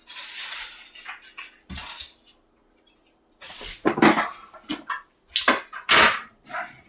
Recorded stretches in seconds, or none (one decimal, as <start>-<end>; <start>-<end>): 0.0-6.9